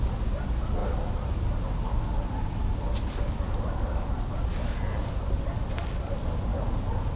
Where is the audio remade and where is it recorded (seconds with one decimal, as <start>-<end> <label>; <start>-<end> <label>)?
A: 0.0-7.2 recorded